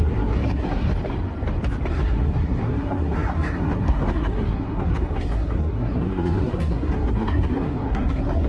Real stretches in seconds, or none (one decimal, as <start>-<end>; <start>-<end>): 0.9-1.9